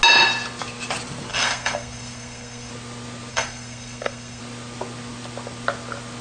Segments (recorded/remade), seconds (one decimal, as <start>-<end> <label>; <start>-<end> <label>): 0.0-1.3 recorded; 1.3-2.7 remade; 2.7-3.3 recorded; 3.3-4.4 remade; 4.4-6.2 recorded